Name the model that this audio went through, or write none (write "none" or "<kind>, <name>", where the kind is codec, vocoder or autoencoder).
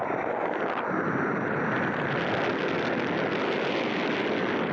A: none